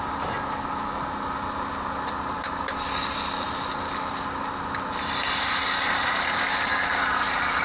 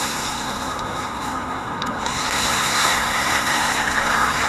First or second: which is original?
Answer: first